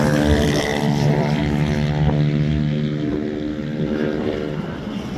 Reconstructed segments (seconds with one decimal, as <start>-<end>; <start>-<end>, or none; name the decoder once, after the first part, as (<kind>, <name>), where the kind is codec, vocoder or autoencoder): 0.7-1.4 (vocoder, BigVGAN v2)